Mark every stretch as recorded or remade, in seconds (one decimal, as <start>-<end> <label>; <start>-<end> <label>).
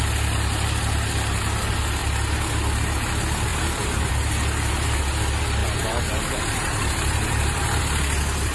0.0-3.5 recorded; 3.5-4.1 remade; 4.1-5.6 recorded; 5.6-7.8 remade; 7.8-8.5 recorded